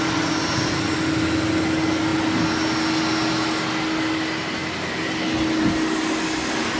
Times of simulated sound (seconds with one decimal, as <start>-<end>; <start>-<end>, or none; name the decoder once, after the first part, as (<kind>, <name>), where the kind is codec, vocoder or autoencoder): none